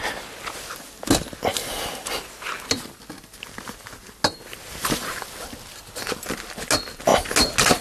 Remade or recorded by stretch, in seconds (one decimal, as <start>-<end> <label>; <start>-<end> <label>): 0.0-7.8 recorded